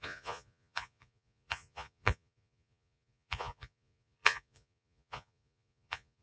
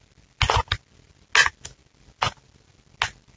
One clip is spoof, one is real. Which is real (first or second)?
second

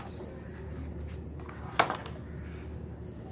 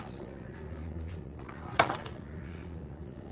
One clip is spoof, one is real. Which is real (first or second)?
first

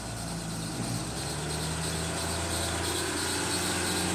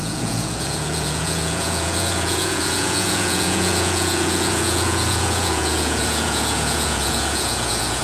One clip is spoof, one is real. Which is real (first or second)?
first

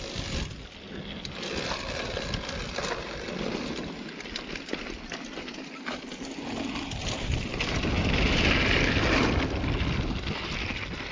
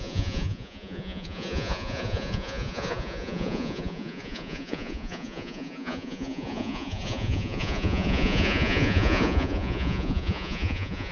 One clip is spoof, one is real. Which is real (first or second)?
first